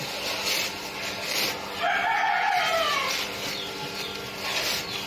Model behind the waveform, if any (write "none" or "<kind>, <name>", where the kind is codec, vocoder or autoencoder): none